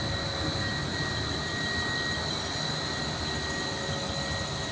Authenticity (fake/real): real